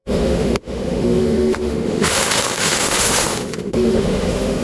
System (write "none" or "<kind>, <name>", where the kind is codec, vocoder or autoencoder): autoencoder, DAC-VAE